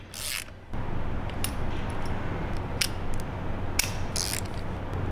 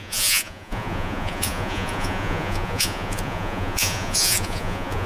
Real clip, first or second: first